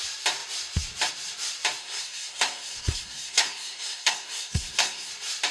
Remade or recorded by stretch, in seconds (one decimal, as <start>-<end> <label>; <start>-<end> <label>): 0.0-1.8 recorded; 1.8-5.1 remade; 5.1-5.5 recorded